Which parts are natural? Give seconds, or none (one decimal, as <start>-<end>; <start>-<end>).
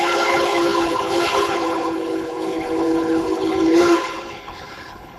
none